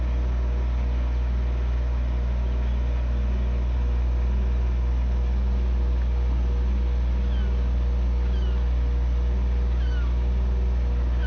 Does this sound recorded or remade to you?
recorded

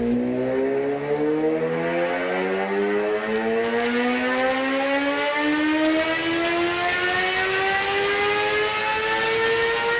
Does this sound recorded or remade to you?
recorded